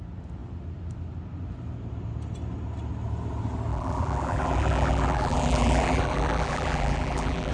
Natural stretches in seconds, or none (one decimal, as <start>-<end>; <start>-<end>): 0.0-3.7